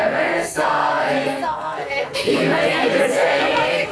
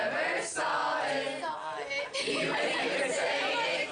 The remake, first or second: first